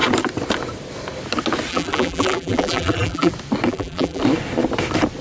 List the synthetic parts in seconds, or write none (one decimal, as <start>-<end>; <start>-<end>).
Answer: 1.7-3.3; 3.7-4.2